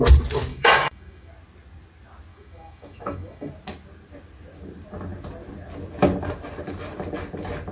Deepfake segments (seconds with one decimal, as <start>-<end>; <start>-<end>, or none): 0.5-1.3; 2.3-3.5